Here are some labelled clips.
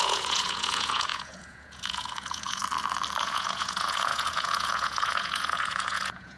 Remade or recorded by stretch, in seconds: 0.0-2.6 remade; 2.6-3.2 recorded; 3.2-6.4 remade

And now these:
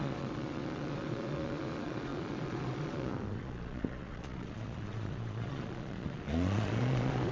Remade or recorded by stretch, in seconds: 0.0-7.3 remade

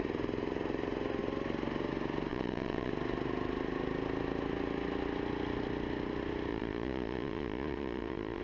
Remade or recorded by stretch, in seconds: 0.0-2.3 recorded; 2.3-2.9 remade; 2.9-6.5 recorded; 6.5-8.4 remade

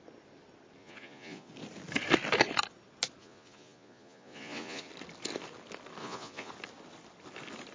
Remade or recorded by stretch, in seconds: 0.0-0.8 recorded; 0.8-1.5 remade; 1.5-3.2 recorded; 3.2-4.9 remade; 4.9-6.0 recorded; 6.0-6.5 remade; 6.5-7.7 recorded

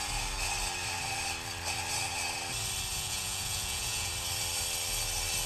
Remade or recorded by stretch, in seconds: 0.0-2.9 recorded; 2.9-4.1 remade; 4.1-5.5 recorded

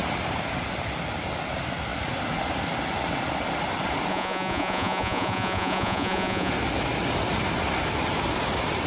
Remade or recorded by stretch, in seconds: 0.0-4.1 recorded; 4.1-6.5 remade; 6.5-8.9 recorded